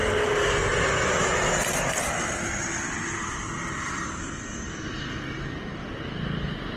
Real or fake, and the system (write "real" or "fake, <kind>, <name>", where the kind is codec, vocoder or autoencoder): real